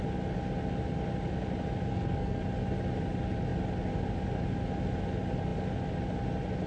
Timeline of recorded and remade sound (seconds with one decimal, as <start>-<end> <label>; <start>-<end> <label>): 0.0-1.9 recorded; 1.9-2.4 remade; 2.4-6.7 recorded